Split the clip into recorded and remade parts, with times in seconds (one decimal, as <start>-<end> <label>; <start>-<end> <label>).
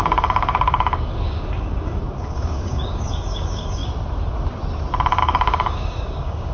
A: 0.0-3.8 remade; 3.8-5.2 recorded; 5.2-6.5 remade